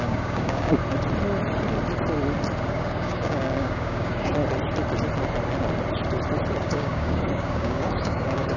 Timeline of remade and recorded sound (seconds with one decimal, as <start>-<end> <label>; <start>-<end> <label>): 0.0-0.8 remade; 0.8-2.7 recorded; 2.7-4.3 remade; 4.3-6.6 recorded; 6.6-8.6 remade